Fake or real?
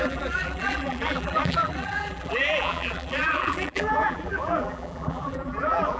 fake